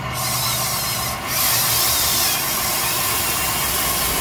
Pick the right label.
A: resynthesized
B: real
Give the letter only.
B